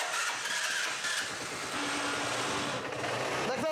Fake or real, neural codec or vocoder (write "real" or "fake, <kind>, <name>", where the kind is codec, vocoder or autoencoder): real